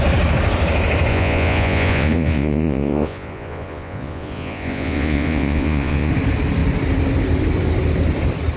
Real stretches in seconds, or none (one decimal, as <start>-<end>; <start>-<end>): 0.0-1.1; 6.1-8.6